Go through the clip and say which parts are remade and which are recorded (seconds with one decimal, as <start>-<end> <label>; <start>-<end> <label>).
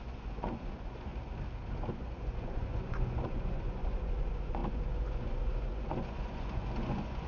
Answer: 0.0-1.1 remade; 1.1-1.9 recorded; 1.9-7.3 remade